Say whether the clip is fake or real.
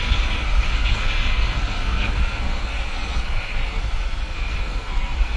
fake